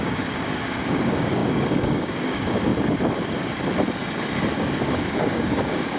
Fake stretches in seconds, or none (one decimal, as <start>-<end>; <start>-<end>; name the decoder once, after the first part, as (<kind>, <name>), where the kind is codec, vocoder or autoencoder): 0.0-2.7 (codec, DAC); 4.5-6.0